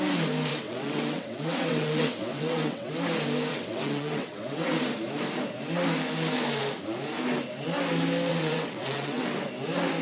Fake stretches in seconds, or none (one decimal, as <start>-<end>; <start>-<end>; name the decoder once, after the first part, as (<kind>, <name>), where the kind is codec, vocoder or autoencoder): 0.5-2.9 (vocoder, WaveNeXt); 3.5-4.8; 8.3-9.2

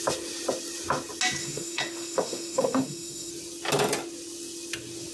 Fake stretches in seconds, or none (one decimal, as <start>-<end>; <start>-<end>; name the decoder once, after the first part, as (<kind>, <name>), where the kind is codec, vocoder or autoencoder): 1.4-3.3 (autoencoder, DAC-VAE)